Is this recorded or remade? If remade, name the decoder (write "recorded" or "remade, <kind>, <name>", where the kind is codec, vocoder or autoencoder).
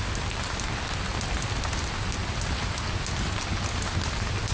recorded